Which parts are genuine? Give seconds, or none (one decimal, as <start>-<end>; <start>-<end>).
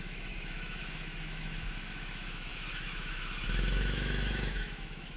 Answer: none